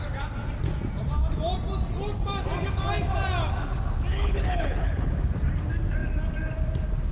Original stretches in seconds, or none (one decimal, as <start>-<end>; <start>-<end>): 0.0-4.1; 5.3-7.1